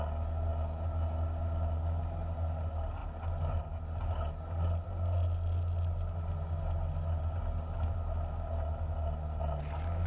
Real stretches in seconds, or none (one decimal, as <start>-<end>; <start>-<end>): 0.0-10.1